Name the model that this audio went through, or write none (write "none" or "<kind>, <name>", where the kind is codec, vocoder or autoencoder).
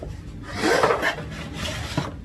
none